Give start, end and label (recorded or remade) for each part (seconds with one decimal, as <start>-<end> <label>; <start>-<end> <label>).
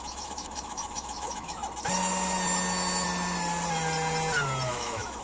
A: 0.0-1.6 remade; 1.6-4.7 recorded; 4.7-5.2 remade